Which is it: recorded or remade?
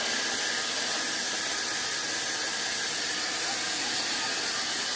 recorded